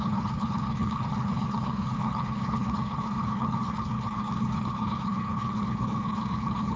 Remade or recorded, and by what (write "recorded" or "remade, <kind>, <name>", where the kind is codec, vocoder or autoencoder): remade, codec, HILCodec